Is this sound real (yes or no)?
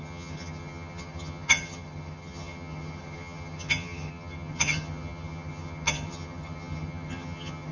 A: no